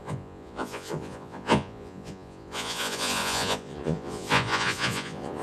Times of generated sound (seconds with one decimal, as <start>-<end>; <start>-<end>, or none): 0.0-5.4